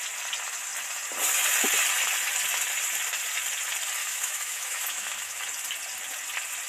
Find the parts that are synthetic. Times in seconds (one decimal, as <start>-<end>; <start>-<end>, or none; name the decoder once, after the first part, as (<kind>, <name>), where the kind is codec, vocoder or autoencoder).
4.0-5.4 (autoencoder, DAC-VAE)